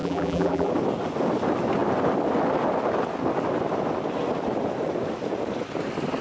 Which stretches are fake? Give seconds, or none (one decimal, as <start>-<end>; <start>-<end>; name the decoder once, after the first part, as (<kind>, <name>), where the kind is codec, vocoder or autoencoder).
0.0-0.7 (vocoder, BigVGAN v2)

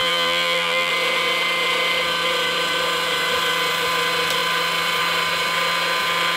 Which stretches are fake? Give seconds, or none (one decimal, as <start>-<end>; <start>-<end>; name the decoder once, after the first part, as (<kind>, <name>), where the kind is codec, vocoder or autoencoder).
0.0-0.9 (vocoder, BigVGAN v2)

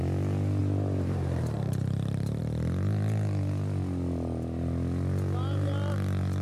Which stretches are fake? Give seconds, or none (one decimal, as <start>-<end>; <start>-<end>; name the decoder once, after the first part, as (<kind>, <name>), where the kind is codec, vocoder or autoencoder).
0.6-2.4 (vocoder, BigVGAN v2)

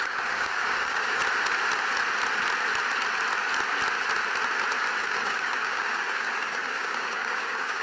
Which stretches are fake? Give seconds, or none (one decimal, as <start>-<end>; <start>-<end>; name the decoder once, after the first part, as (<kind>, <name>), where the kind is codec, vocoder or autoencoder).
0.0-1.2 (codec, DAC); 5.0-7.8

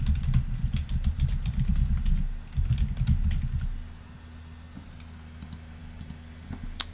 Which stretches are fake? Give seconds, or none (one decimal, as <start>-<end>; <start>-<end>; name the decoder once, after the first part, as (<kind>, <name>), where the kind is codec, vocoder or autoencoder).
none